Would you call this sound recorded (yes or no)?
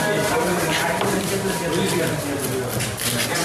yes